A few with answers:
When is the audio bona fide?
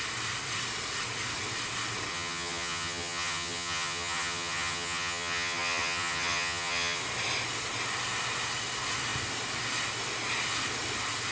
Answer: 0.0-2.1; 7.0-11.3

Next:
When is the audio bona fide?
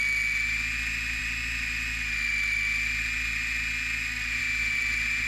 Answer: 0.0-5.3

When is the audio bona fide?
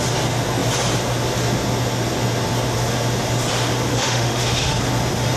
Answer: 0.0-3.9; 4.8-5.4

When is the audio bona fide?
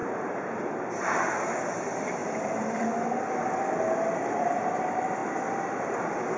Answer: 0.0-2.2; 4.5-5.2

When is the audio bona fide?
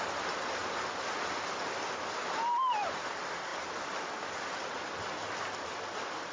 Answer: 0.0-6.3